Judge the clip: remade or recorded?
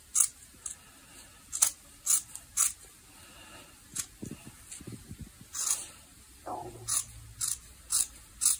recorded